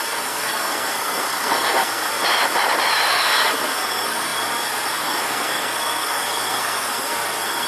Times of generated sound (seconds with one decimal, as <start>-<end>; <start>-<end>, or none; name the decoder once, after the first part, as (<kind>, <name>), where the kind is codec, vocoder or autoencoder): 0.0-2.2 (codec, SNAC); 3.1-7.7